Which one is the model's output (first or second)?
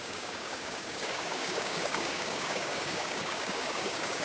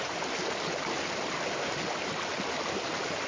first